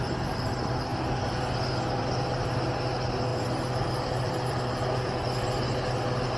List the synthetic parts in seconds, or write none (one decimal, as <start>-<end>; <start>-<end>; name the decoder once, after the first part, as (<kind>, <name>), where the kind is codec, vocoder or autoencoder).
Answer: 3.3-4.7 (vocoder, BigVGAN v2)